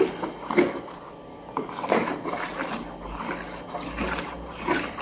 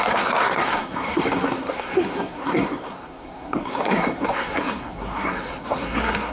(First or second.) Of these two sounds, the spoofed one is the second